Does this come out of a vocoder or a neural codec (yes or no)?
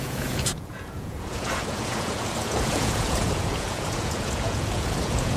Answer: yes